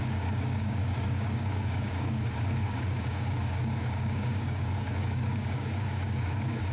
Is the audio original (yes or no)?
no